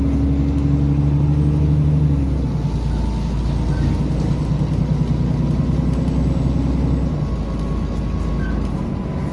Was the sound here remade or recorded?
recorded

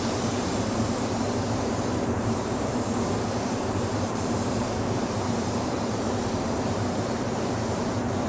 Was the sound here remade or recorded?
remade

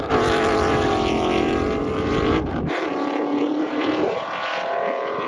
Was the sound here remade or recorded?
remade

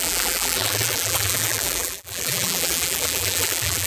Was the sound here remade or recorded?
remade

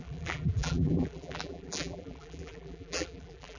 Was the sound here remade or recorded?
remade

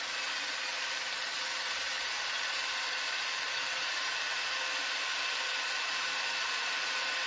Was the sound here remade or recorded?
remade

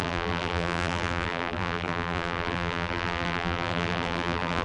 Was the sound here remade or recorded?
remade